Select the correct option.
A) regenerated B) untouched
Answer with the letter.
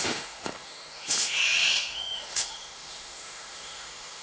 A